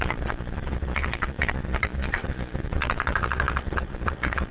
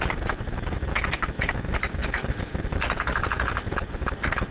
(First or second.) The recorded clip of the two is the second